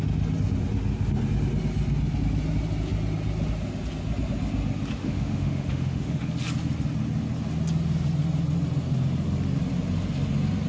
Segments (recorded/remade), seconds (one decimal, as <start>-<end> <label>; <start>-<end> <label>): 0.0-5.0 recorded; 5.0-6.3 remade; 6.3-10.7 recorded